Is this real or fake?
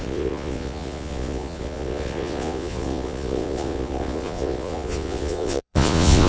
fake